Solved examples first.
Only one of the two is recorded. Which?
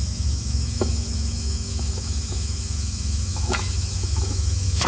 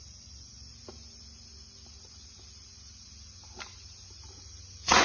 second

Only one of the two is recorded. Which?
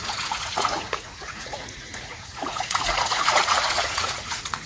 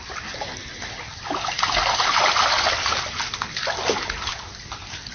second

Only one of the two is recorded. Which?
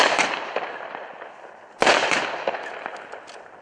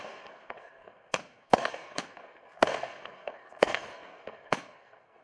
first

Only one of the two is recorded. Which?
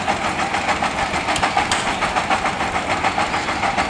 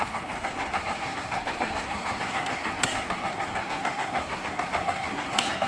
first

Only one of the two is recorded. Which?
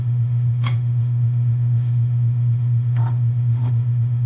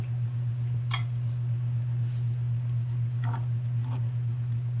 second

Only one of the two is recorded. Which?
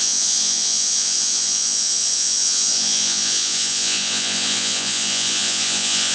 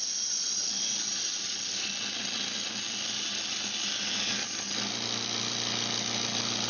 second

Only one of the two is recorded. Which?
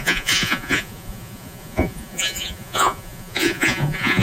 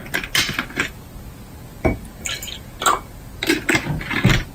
second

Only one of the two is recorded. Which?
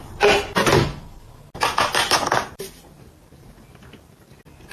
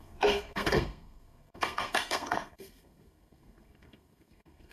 first